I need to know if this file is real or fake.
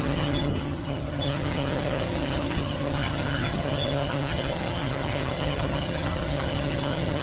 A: fake